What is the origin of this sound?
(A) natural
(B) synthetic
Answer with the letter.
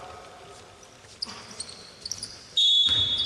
A